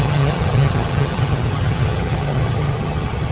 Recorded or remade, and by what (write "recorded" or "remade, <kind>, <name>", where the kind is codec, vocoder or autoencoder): remade, vocoder, HiFi-GAN